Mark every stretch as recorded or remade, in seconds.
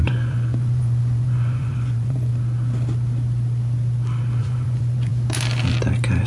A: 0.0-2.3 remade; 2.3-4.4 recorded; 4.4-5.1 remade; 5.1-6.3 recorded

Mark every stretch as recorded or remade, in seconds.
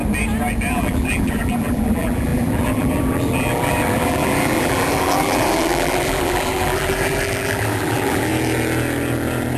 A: 0.0-0.7 recorded; 0.7-8.3 remade; 8.3-9.6 recorded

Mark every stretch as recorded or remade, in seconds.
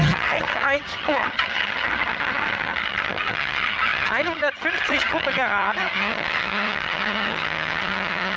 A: 0.0-8.4 remade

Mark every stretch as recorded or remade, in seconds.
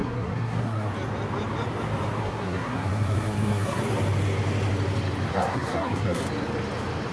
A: 0.0-0.9 remade; 0.9-2.2 recorded; 2.2-3.8 remade; 3.8-5.3 recorded; 5.3-6.2 remade; 6.2-7.1 recorded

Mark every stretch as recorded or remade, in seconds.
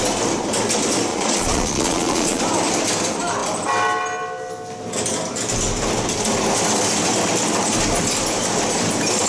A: 0.0-1.1 recorded; 1.1-2.4 remade; 2.4-9.3 recorded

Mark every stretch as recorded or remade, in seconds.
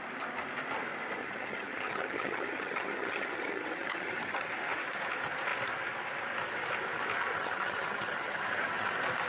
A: 0.0-1.2 recorded; 1.2-4.5 remade; 4.5-7.3 recorded; 7.3-8.9 remade; 8.9-9.3 recorded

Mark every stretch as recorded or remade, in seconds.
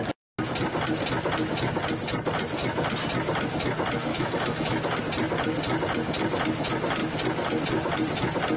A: 0.0-4.1 recorded; 4.1-5.0 remade; 5.0-8.6 recorded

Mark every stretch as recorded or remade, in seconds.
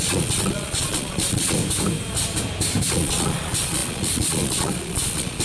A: 0.0-1.6 remade; 1.6-2.9 recorded; 2.9-5.4 remade